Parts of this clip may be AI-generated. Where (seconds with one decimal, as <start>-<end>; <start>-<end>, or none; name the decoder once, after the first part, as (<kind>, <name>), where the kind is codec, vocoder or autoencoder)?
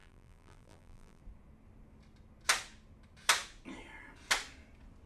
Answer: 0.0-1.2 (vocoder, BigVGAN v2)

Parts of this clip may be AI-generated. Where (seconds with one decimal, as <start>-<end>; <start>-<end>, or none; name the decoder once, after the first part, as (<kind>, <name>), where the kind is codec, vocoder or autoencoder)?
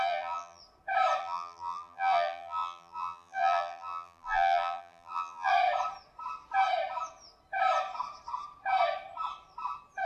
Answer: 0.0-0.6 (vocoder, BigVGAN v2); 1.2-5.5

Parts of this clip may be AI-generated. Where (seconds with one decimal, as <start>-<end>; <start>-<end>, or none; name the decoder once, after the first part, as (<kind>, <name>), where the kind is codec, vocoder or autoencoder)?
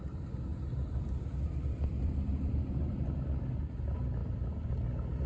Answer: 0.5-3.7 (vocoder, BigVGAN v2)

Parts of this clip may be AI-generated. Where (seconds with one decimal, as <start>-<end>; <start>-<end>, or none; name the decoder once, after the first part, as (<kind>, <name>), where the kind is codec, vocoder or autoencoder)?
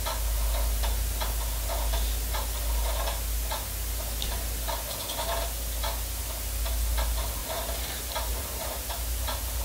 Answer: none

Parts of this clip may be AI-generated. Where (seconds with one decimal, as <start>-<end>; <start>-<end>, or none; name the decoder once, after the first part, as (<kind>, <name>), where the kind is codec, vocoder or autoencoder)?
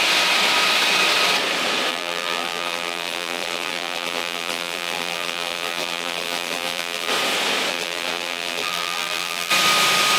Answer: 1.9-7.1 (vocoder, BigVGAN v2); 7.7-9.5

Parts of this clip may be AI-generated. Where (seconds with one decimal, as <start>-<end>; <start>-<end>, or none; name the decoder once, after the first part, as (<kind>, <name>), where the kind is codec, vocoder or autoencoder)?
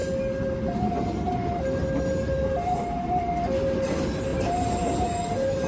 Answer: 4.3-5.0 (vocoder, BigVGAN v2)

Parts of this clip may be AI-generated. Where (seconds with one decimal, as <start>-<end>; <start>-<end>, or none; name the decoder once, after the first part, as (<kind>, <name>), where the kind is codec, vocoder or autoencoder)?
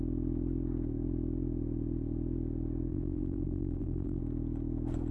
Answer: 2.9-4.2 (vocoder, BigVGAN v2)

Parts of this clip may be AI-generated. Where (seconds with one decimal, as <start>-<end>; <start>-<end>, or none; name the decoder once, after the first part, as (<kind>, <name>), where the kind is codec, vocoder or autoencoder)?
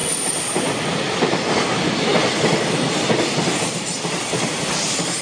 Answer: 0.0-1.5 (vocoder, BigVGAN v2); 2.1-3.3